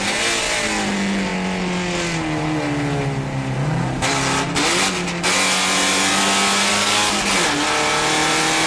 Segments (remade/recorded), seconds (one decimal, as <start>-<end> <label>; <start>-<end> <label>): 0.0-6.7 recorded; 6.7-7.3 remade; 7.3-8.7 recorded